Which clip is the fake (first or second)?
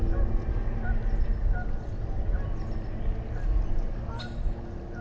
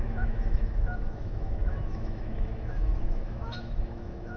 second